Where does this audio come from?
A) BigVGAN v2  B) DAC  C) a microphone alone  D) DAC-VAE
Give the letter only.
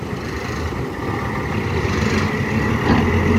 C